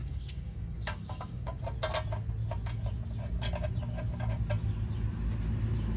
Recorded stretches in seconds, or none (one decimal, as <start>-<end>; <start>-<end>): 1.6-6.0